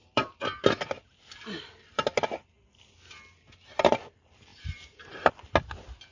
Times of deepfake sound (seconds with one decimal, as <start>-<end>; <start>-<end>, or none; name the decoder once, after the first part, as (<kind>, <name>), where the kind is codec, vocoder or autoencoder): 0.0-0.8 (vocoder, BigVGAN v2); 4.5-5.3